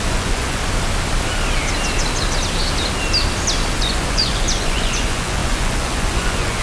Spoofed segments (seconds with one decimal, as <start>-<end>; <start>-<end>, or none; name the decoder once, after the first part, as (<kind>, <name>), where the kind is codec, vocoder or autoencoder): 0.0-0.6 (vocoder, Vocos); 3.8-6.6

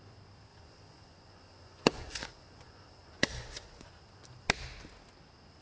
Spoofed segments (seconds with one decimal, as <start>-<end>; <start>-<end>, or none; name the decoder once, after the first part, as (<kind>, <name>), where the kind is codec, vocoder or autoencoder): 0.5-3.9 (vocoder, Vocos)

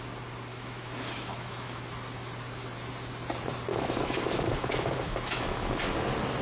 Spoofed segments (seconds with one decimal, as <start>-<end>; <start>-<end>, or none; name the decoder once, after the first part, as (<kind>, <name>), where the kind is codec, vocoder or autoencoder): 0.5-1.8 (autoencoder, DAC-VAE); 3.7-5.8

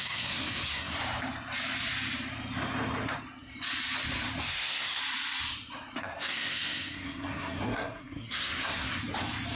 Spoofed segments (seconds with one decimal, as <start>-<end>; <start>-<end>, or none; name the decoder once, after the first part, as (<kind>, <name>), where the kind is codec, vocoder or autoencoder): 0.0-1.0 (codec, SNAC); 4.4-5.0; 6.0-9.0